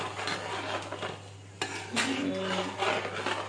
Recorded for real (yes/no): yes